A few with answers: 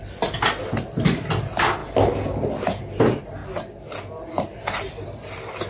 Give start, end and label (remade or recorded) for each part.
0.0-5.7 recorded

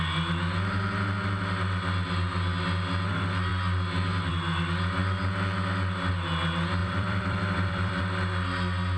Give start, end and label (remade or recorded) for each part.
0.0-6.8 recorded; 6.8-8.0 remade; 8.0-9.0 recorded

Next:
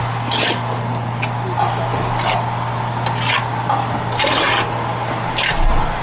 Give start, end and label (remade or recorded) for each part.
0.0-6.0 recorded

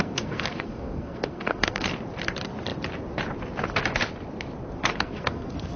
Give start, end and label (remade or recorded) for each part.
0.0-2.0 remade; 2.0-4.8 recorded; 4.8-5.8 remade